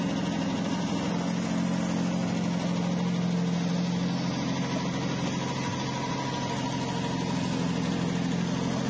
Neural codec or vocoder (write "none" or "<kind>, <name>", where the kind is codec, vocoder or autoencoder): none